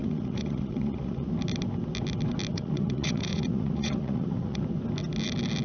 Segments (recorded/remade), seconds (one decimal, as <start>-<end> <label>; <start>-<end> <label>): 0.0-1.3 remade; 1.3-2.5 recorded; 2.5-4.6 remade; 4.6-5.6 recorded